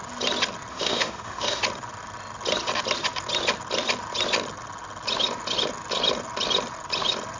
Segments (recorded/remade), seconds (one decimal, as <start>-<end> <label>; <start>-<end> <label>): 0.0-0.7 recorded; 0.7-1.6 remade; 1.6-7.4 recorded